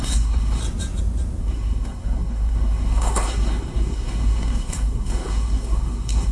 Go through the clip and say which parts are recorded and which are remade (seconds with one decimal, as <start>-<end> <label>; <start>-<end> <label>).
0.0-0.6 remade; 0.6-1.4 recorded; 1.4-6.3 remade